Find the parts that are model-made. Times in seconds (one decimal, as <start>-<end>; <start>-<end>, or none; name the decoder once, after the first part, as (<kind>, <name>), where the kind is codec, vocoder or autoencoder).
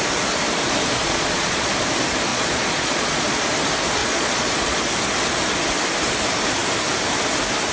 1.0-1.7 (vocoder, Vocos); 2.3-3.4; 4.0-4.8